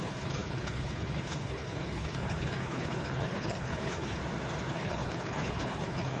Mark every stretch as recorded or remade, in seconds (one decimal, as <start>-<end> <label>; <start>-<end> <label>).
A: 0.0-4.2 remade; 4.2-4.7 recorded; 4.7-6.2 remade